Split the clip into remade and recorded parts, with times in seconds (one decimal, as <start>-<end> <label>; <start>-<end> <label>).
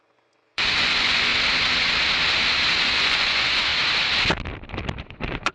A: 0.0-1.3 remade; 1.3-2.8 recorded; 2.8-3.7 remade; 3.7-5.1 recorded; 5.1-5.5 remade